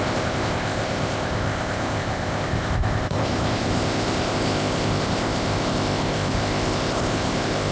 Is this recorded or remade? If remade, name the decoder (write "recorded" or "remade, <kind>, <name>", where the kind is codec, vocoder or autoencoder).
remade, codec, ZipCodec